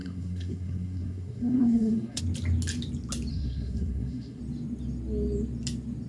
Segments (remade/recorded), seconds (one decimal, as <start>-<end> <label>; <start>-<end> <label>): 0.0-2.2 remade; 2.2-3.3 recorded; 3.3-4.4 remade; 4.4-6.1 recorded